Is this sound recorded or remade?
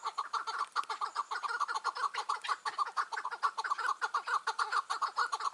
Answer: recorded